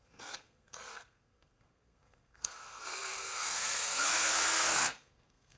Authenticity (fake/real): fake